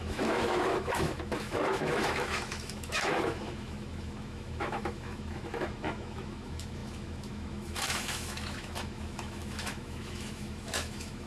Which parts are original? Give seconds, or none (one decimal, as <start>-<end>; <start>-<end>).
none

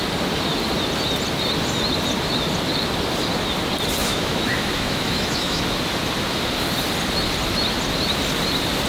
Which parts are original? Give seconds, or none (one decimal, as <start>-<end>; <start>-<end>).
0.0-4.0; 5.6-8.9

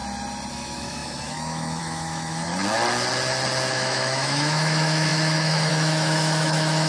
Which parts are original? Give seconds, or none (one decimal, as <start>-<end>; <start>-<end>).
0.0-0.5; 2.5-3.7

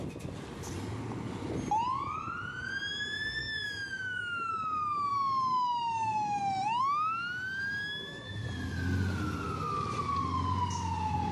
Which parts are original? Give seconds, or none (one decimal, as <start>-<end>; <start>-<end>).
0.0-3.4; 4.5-11.3